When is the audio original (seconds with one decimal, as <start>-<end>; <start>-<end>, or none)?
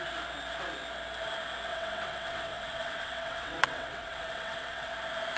0.0-1.7; 4.9-5.4